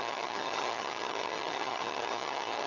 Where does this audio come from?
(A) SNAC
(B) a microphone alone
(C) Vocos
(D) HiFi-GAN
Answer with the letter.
D